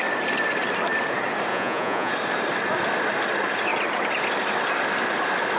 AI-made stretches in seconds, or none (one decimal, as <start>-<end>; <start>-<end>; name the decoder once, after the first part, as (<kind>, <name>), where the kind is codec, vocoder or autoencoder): 1.5-2.1 (vocoder, Vocos)